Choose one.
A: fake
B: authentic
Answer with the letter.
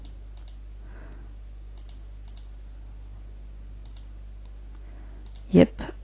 B